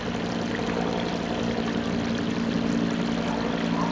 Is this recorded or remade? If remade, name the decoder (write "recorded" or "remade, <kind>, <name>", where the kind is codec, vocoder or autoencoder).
recorded